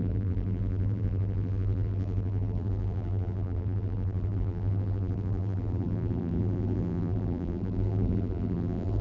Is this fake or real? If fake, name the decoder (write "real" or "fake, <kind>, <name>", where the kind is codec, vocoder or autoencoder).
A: fake, vocoder, BigVGAN v2